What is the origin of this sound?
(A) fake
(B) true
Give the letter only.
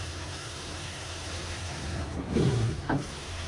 A